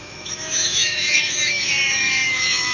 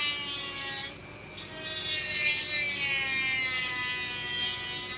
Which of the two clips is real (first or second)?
second